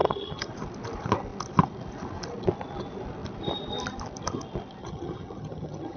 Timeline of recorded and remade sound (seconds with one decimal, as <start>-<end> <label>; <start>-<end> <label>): 0.0-0.5 remade; 0.5-4.8 recorded; 4.8-6.0 remade